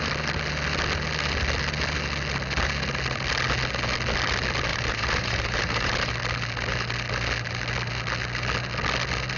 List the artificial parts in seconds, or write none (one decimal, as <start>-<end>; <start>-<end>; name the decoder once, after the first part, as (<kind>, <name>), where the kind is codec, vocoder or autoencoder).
4.7-6.1 (vocoder, BigVGAN v2)